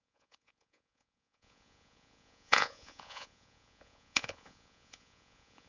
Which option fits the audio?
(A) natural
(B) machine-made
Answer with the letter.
B